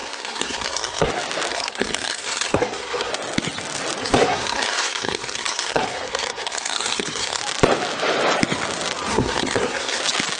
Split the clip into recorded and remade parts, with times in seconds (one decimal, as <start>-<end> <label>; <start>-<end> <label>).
0.0-1.1 remade; 1.1-1.5 recorded; 1.5-3.1 remade; 3.1-4.0 recorded; 4.0-7.4 remade; 7.4-9.1 recorded; 9.1-10.0 remade; 10.0-10.4 recorded